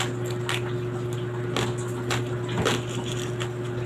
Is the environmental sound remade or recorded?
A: recorded